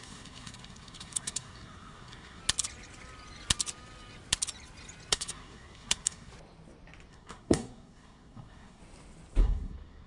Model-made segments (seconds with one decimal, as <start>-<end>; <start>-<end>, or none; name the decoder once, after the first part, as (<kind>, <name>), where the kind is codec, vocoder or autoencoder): 0.0-2.4 (codec, SNAC); 5.1-6.3; 7.1-8.8; 9.4-10.1